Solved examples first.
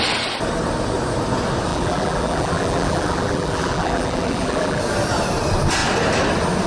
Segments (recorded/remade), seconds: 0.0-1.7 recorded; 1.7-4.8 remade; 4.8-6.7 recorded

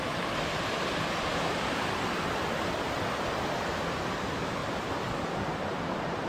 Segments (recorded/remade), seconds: 0.0-1.3 recorded; 1.3-1.9 remade; 1.9-4.6 recorded; 4.6-5.2 remade; 5.2-6.3 recorded